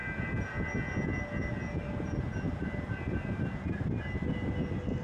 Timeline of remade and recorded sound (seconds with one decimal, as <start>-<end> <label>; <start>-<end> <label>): 0.0-5.0 recorded